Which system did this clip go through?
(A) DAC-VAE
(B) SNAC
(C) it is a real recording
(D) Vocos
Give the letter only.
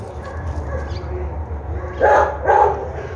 C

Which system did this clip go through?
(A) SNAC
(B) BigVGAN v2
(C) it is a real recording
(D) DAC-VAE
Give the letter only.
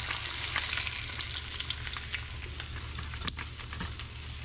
C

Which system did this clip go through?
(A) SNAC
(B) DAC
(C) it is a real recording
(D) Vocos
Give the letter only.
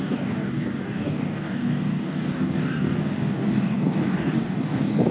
B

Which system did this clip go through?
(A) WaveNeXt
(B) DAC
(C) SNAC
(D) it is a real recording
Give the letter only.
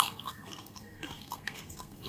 C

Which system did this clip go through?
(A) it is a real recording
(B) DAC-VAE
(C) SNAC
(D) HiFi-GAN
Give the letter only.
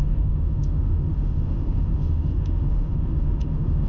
B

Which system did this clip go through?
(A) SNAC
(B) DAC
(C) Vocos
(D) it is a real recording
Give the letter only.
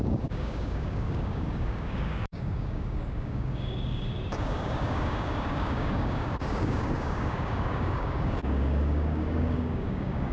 B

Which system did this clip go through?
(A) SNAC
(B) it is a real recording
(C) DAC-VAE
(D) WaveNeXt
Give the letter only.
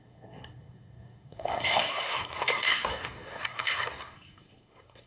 A